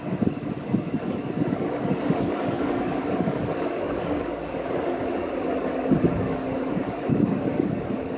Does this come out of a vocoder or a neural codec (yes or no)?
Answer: yes